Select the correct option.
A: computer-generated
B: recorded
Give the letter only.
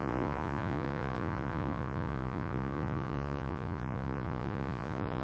A